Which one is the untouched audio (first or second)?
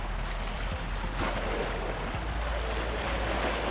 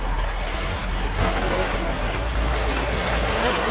first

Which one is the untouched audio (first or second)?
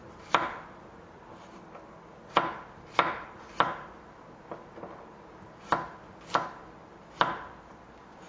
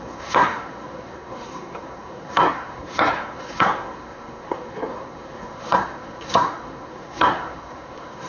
first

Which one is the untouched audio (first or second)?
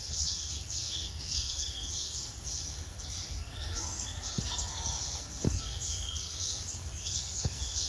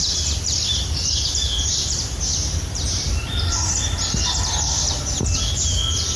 second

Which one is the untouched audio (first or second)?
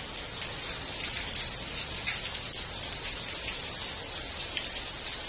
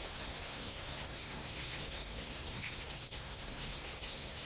first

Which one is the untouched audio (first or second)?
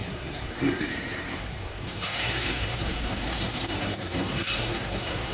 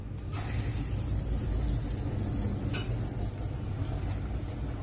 second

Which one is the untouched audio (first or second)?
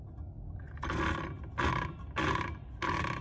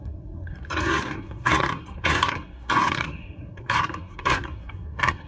first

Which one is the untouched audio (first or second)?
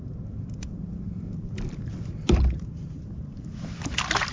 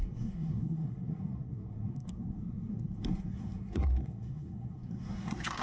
first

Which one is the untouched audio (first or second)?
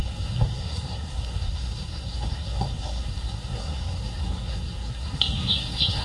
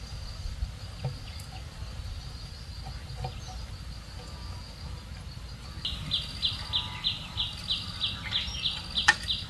second